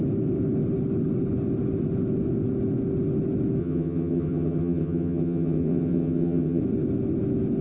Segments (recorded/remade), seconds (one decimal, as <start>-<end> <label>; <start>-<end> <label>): 0.0-3.6 recorded; 3.6-6.6 remade; 6.6-7.6 recorded